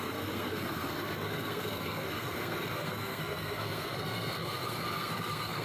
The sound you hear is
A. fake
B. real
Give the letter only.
A